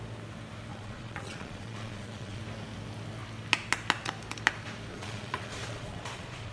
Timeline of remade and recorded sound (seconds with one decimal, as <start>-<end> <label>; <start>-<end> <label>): 0.0-0.7 recorded; 0.7-2.4 remade; 2.4-4.9 recorded; 4.9-6.5 remade